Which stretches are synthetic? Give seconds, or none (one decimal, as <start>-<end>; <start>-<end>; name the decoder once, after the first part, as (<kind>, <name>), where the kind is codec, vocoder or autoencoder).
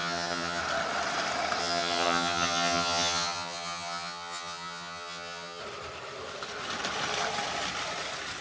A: 0.0-0.6 (vocoder, HiFi-GAN); 1.6-5.6